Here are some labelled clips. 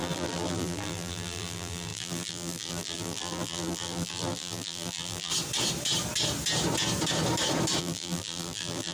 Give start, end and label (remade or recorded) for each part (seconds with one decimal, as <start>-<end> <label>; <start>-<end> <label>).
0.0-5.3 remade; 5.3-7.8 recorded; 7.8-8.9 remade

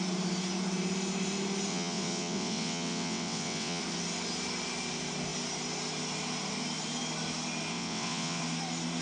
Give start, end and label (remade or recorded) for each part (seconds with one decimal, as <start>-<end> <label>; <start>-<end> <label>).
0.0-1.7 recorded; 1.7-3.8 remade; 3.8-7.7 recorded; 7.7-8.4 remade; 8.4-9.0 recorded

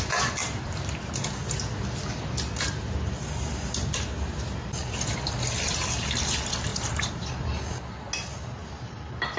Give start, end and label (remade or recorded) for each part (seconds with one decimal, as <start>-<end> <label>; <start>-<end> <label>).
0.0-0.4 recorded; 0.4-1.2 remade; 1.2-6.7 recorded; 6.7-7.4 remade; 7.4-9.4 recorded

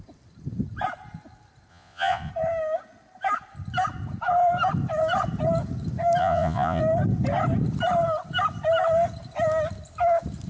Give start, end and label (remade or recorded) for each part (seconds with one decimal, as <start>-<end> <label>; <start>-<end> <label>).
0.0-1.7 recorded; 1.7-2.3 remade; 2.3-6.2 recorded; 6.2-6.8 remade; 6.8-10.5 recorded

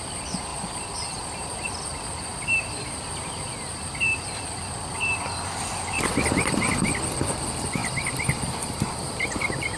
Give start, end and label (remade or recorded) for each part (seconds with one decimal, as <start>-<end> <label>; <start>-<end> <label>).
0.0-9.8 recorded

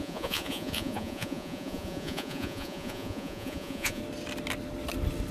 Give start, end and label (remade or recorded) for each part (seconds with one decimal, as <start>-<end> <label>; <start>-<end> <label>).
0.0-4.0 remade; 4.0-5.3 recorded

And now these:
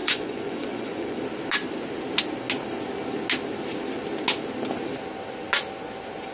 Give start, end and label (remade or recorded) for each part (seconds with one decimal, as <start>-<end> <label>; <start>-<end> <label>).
0.0-1.2 remade; 1.2-6.3 recorded

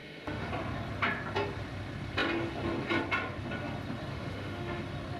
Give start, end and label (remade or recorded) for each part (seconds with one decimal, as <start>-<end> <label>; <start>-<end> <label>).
0.0-0.5 remade; 0.5-4.1 recorded; 4.1-4.8 remade; 4.8-5.2 recorded